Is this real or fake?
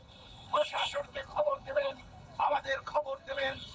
fake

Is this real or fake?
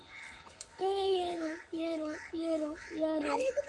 fake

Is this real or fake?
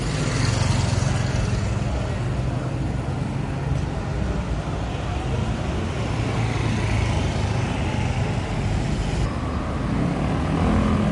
real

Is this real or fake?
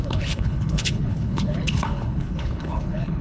fake